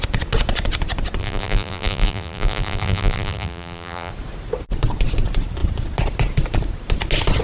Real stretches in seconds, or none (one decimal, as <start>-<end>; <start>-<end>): 0.0-1.2; 4.1-7.4